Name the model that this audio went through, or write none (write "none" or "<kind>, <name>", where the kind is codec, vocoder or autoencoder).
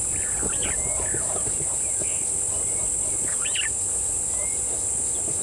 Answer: none